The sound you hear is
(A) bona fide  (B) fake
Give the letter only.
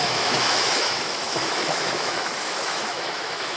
B